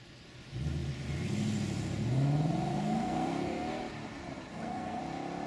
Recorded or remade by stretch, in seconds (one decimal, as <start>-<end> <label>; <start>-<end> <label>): 0.0-2.7 recorded; 2.7-3.8 remade; 3.8-4.5 recorded; 4.5-5.0 remade; 5.0-5.5 recorded